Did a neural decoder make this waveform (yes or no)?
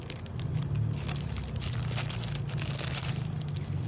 no